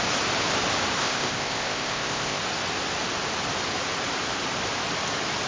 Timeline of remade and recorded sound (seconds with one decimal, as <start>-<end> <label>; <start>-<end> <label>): 0.0-1.0 recorded; 1.0-2.4 remade; 2.4-5.5 recorded